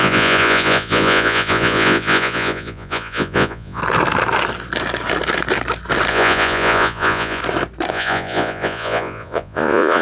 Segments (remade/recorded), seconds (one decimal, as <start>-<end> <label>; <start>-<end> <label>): 0.0-3.8 remade; 3.8-6.1 recorded; 6.1-7.4 remade; 7.4-7.9 recorded; 7.9-10.0 remade